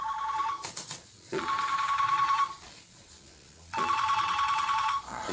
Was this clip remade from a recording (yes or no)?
yes